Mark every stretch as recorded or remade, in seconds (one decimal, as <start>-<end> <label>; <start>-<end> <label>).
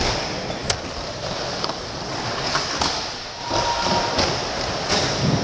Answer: 0.0-5.4 recorded